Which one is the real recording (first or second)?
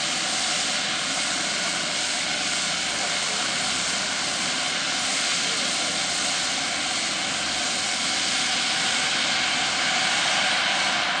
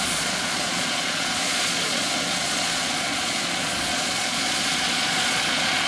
first